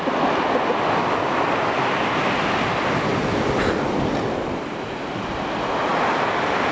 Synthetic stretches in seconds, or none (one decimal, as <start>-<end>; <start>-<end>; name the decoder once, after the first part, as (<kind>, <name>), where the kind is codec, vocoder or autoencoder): none